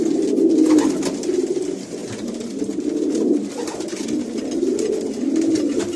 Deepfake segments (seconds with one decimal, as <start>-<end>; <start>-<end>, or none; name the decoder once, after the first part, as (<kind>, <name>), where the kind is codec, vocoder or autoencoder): 2.0-2.6 (vocoder, BigVGAN v2)